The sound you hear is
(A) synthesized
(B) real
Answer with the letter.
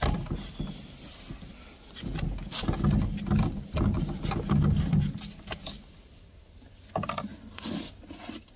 B